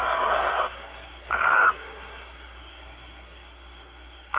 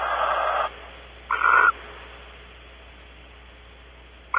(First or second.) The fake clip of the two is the first